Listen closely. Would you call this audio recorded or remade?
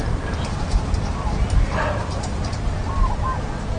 remade